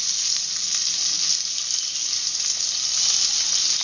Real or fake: real